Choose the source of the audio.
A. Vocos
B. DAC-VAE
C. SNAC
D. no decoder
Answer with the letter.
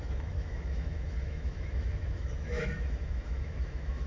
B